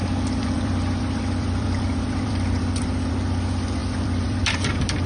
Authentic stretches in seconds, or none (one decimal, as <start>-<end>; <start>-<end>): 3.1-3.8; 4.4-5.1